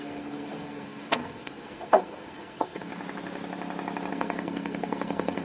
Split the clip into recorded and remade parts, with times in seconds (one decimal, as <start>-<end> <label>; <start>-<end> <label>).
0.0-2.9 remade; 2.9-4.1 recorded; 4.1-5.4 remade